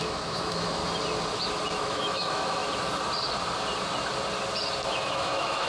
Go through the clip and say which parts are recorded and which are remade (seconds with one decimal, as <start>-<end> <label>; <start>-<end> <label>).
0.0-0.8 remade; 0.8-1.8 recorded; 1.8-2.6 remade; 2.6-4.9 recorded; 4.9-5.7 remade